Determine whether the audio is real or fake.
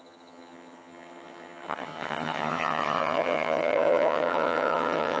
fake